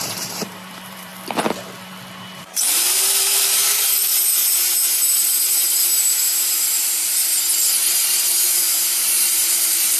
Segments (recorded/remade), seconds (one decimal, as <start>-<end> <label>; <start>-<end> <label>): 0.0-1.1 remade; 1.1-2.4 recorded; 2.4-7.3 remade; 7.3-7.9 recorded; 7.9-10.0 remade